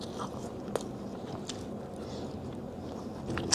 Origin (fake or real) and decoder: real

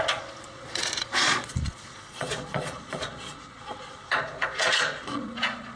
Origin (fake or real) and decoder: fake, vocoder, Vocos